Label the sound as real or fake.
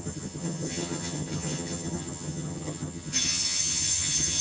fake